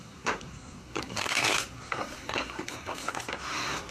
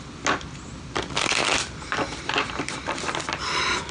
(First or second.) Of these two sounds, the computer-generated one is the first